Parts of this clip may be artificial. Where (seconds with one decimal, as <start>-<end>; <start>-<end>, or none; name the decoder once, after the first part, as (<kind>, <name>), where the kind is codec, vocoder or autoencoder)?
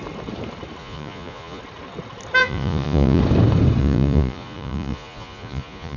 0.8-1.6 (vocoder, Vocos); 2.4-3.2; 3.8-6.0